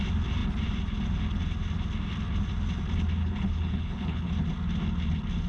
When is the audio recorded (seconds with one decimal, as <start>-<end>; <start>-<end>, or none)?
0.0-3.2; 4.3-5.5